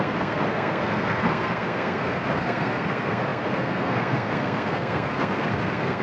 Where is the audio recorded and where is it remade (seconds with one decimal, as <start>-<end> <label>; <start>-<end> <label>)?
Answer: 0.0-6.0 remade